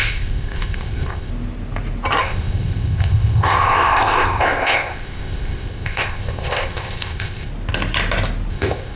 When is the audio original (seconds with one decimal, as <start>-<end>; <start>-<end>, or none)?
1.3-2.2; 7.5-8.5